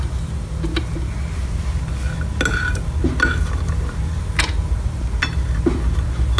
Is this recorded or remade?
recorded